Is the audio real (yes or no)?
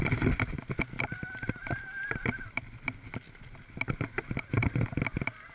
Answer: yes